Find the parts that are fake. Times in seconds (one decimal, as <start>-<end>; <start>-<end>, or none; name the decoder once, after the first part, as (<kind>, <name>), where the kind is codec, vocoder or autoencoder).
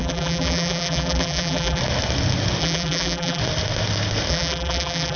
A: 0.0-1.8 (vocoder, BigVGAN v2); 2.6-3.4; 4.3-5.2